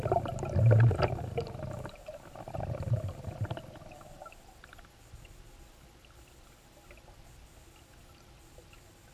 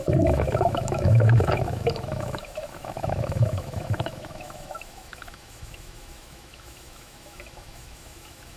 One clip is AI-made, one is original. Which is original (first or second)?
first